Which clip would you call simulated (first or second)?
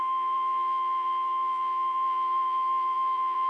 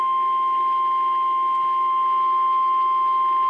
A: first